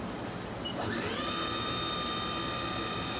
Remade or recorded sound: recorded